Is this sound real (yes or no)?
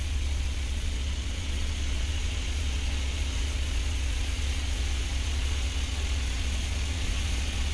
no